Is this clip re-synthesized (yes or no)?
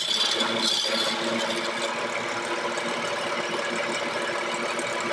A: no